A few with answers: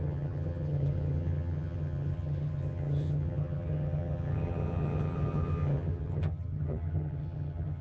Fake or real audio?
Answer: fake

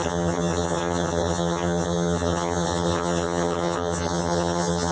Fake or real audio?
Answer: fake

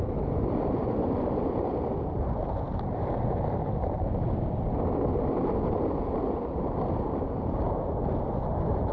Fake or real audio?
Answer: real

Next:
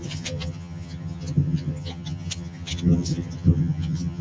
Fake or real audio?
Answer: fake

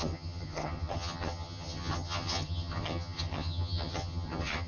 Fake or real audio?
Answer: fake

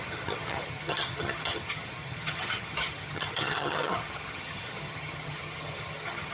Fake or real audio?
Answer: fake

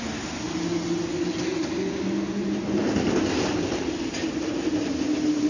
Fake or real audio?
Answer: real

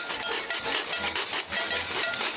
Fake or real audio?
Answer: real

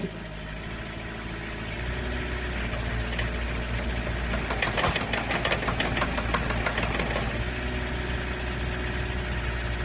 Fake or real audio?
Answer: real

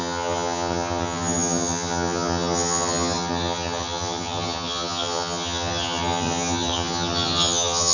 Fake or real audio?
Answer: fake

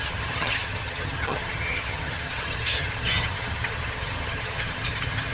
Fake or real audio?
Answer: fake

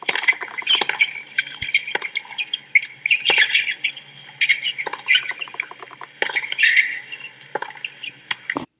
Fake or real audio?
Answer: real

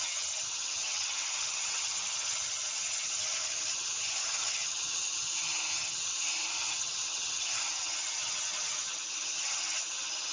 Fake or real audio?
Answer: fake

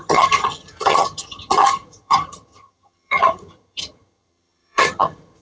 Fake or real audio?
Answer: fake